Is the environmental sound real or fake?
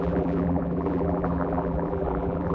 fake